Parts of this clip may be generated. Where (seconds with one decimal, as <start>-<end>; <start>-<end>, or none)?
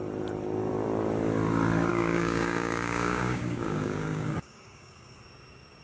1.9-5.2